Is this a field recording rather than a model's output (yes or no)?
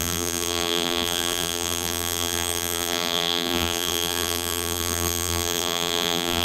no